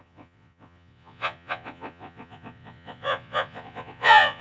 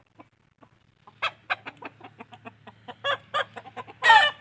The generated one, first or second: first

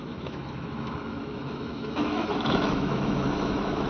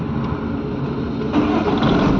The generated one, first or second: first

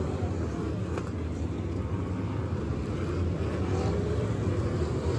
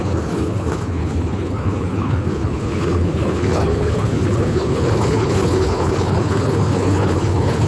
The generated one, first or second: second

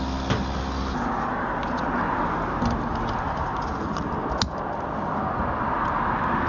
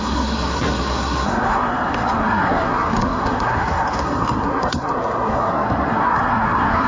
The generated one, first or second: second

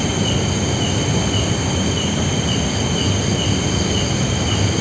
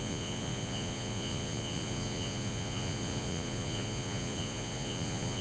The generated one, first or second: second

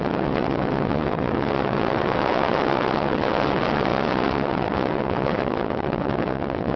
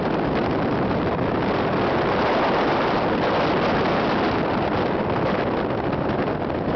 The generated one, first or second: first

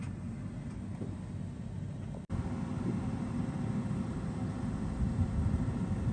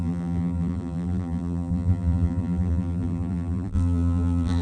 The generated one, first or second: second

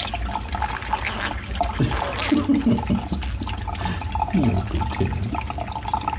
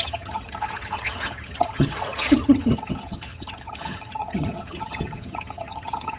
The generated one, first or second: second